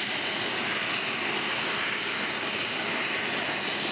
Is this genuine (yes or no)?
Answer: yes